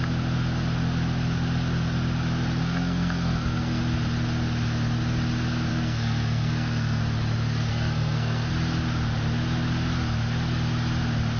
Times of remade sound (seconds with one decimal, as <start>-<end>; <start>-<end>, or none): 2.6-3.8; 5.7-7.0; 7.7-8.5